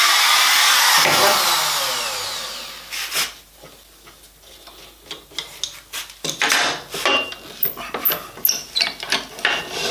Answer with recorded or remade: recorded